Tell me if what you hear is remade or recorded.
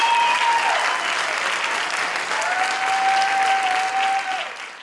recorded